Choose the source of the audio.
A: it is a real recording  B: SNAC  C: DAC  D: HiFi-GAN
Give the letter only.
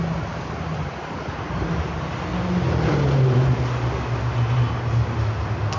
A